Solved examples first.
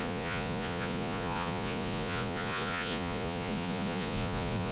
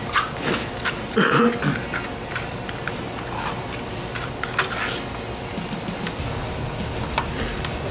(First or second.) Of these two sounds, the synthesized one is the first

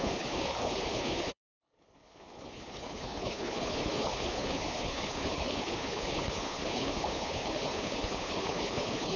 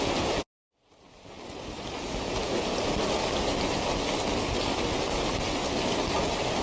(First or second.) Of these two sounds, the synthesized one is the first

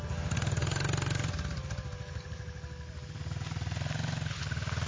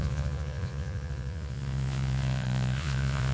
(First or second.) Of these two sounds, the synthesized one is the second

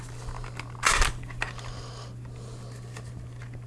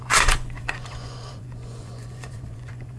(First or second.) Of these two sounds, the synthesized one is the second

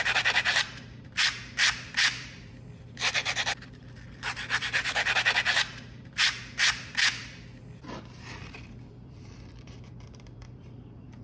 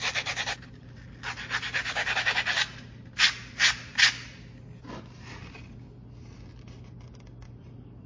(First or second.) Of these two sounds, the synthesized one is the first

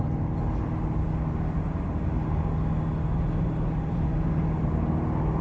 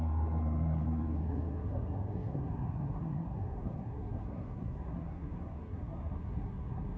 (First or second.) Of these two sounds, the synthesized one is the second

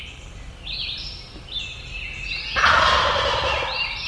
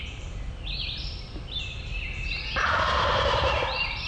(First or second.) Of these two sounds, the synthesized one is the second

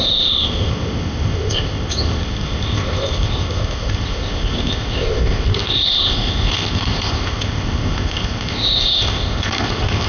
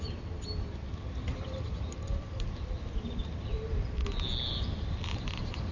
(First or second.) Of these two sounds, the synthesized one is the first